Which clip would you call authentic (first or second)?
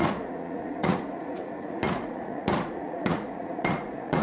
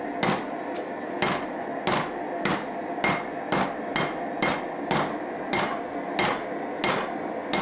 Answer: second